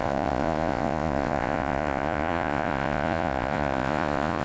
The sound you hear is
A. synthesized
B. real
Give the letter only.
A